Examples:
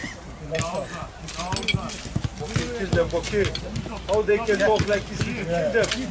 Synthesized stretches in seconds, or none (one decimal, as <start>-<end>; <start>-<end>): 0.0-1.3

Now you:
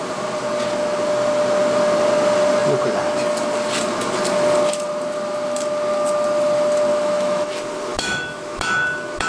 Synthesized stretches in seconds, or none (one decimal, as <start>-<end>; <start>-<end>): 6.9-7.5; 7.9-9.3

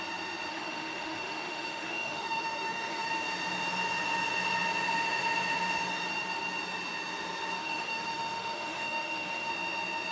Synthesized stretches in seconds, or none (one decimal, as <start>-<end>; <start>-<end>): 0.5-3.1; 7.6-9.5

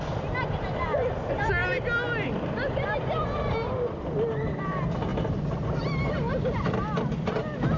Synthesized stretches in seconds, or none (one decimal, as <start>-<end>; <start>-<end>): none

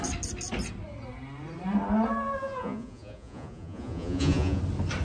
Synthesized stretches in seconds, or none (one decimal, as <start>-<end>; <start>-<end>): 2.4-4.6

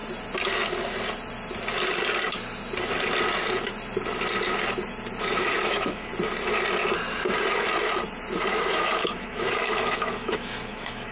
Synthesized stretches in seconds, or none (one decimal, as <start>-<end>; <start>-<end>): 5.2-6.1; 8.5-11.1

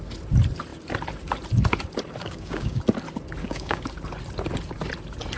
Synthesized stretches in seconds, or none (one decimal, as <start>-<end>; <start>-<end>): 2.2-2.8; 3.4-3.9

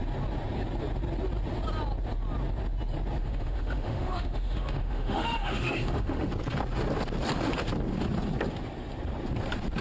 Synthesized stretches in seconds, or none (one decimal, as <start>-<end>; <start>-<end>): 3.2-6.3